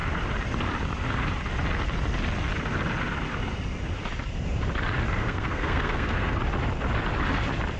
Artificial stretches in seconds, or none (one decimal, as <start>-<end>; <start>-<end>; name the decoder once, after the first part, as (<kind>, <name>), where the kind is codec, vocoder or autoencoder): 5.2-6.4 (codec, SNAC)